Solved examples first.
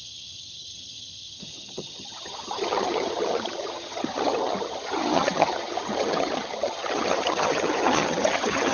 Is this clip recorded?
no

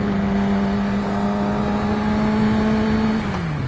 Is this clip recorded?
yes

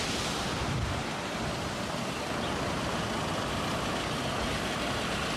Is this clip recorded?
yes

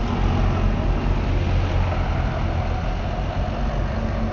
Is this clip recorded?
yes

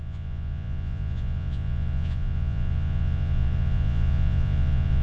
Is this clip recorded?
no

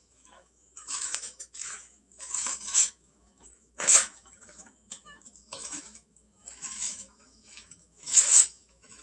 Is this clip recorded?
no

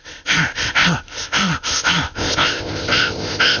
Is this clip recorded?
no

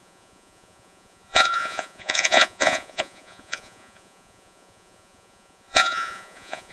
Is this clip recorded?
no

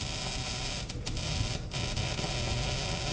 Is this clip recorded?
yes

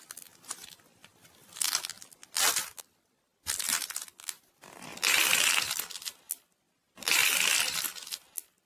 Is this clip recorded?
yes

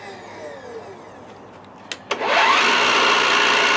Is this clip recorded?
yes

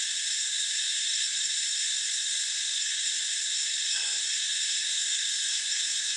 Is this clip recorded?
no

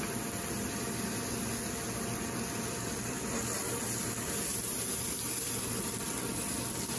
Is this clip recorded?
yes